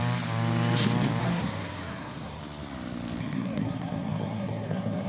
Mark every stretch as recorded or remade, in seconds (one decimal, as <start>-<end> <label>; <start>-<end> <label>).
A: 0.0-1.2 recorded; 1.2-2.4 remade; 2.4-3.2 recorded; 3.2-5.1 remade